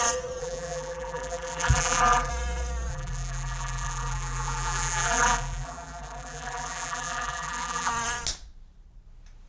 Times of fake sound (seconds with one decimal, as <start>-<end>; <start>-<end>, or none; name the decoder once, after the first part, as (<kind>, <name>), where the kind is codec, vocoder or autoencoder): 0.4-2.3 (vocoder, BigVGAN v2); 2.9-7.9